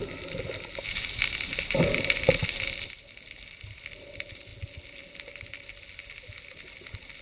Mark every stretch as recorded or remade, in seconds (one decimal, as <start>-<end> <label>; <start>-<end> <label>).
0.0-7.2 recorded